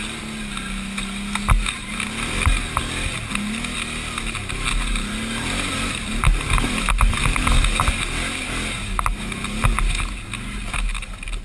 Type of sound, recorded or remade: recorded